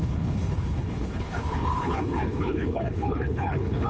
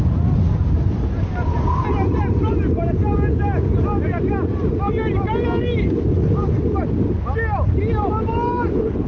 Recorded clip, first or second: second